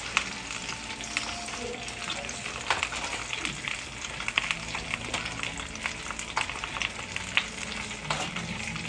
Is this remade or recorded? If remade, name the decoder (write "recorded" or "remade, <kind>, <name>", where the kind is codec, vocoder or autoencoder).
recorded